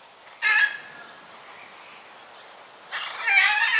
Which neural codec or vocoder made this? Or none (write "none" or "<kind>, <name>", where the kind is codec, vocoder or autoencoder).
none